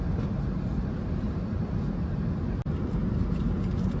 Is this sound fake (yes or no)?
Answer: no